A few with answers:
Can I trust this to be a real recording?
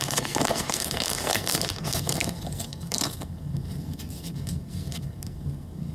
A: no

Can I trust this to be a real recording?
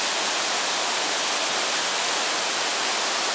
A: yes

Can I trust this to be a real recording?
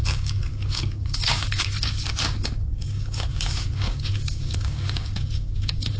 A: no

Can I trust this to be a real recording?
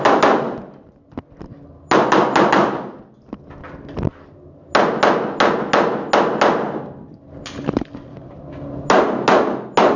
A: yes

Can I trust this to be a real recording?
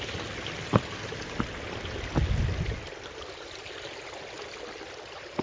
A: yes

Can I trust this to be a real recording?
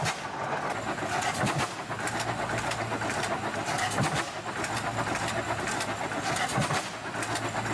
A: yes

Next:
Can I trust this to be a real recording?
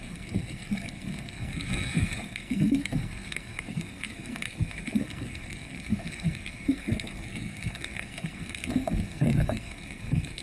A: no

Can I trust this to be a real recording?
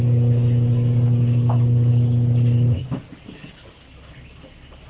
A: yes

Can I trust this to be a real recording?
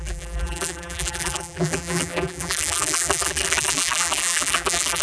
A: no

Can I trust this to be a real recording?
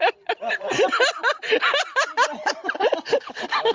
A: yes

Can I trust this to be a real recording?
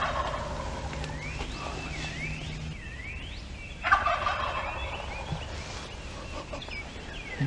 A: yes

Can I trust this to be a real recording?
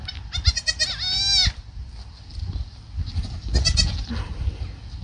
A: yes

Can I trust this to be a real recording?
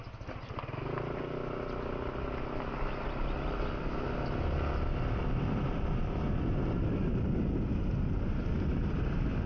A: yes